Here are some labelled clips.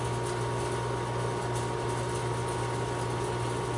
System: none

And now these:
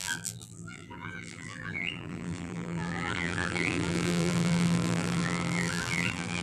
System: vocoder, BigVGAN v2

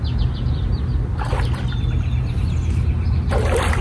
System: none